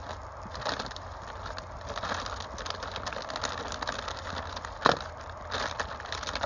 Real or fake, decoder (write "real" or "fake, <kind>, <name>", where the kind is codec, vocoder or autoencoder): real